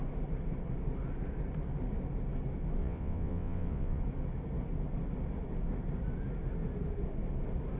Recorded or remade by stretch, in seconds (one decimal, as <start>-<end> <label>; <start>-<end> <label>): 0.0-2.8 recorded; 2.8-4.0 remade; 4.0-7.8 recorded

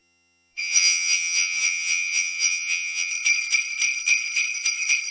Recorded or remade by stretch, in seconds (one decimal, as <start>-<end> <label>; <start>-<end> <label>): 0.0-3.1 remade; 3.1-5.1 recorded

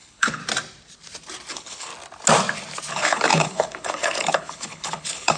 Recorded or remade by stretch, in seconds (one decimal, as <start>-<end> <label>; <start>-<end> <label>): 0.0-0.4 remade; 0.4-1.5 recorded; 1.5-1.9 remade; 1.9-2.9 recorded; 2.9-5.4 remade

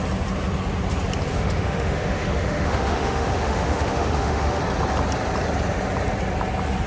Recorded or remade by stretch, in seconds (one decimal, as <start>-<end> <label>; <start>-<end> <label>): 0.0-1.3 recorded; 1.3-4.6 remade; 4.6-6.9 recorded

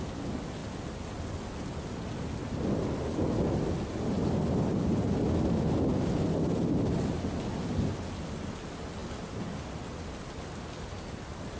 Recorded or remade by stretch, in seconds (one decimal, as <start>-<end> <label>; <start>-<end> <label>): 0.0-11.6 recorded